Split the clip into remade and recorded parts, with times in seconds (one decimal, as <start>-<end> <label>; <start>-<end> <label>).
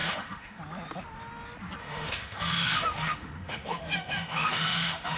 0.0-0.6 remade; 0.6-1.8 recorded; 1.8-5.2 remade